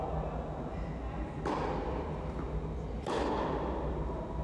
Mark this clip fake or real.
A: real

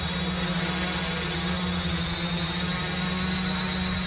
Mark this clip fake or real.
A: real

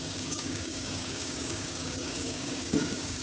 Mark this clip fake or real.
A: fake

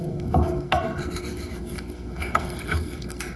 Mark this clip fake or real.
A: fake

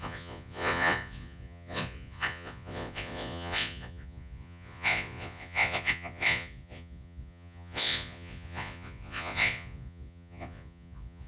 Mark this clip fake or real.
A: fake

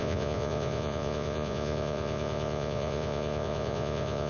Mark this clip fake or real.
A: fake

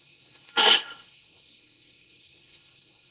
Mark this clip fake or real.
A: fake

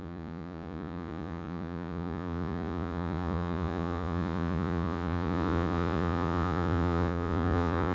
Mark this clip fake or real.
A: fake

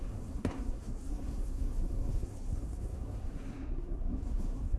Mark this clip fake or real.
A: fake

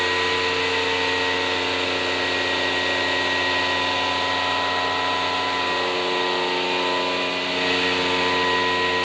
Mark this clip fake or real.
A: real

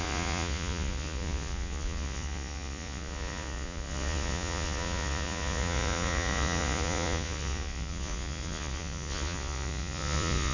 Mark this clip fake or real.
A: fake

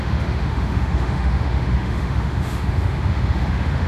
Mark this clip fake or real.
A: fake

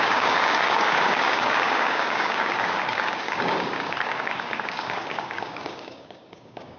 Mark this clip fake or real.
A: fake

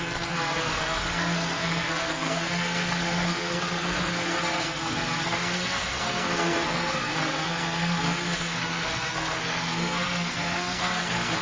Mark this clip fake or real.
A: fake